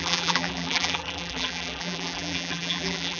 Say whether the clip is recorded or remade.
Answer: remade